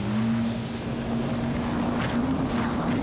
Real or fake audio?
real